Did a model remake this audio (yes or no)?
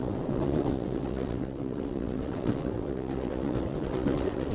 yes